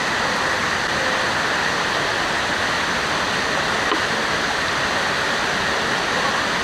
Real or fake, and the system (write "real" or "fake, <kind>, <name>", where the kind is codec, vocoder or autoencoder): real